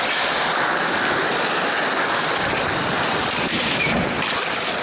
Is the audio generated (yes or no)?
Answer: yes